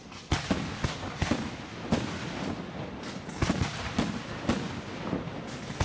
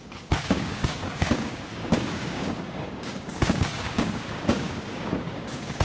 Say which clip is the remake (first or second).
second